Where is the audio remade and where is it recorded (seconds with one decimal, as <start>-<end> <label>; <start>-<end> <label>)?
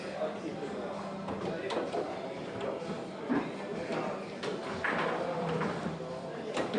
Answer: 0.0-0.5 remade; 0.5-1.8 recorded; 1.8-3.7 remade; 3.7-5.4 recorded; 5.4-6.8 remade